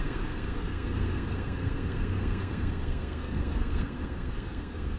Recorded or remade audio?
remade